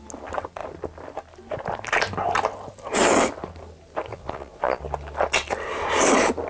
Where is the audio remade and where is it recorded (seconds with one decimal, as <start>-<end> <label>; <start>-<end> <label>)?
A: 0.0-4.1 recorded; 4.1-4.8 remade; 4.8-6.5 recorded